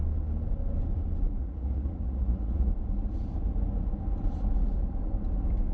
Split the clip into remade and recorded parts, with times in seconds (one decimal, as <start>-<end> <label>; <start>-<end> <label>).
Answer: 0.0-1.4 recorded; 1.4-2.7 remade; 2.7-5.7 recorded